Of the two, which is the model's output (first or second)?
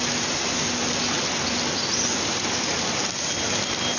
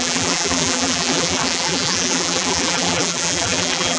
second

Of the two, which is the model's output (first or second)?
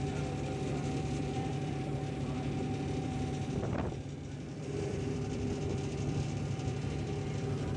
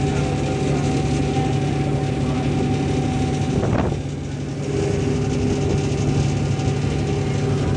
first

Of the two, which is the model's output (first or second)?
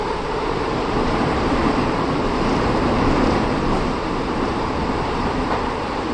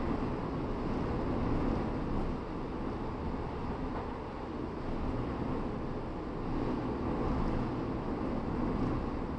first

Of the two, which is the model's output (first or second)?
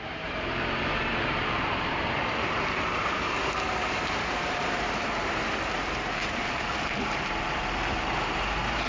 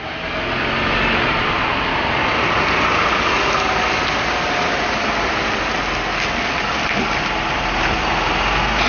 first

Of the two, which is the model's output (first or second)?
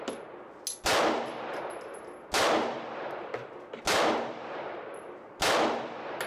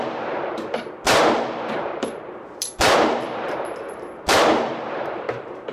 second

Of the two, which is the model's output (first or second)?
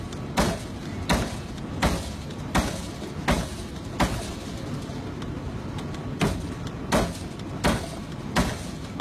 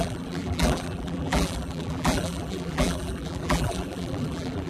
second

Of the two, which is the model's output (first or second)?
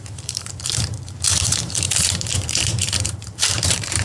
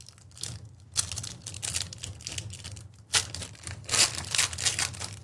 first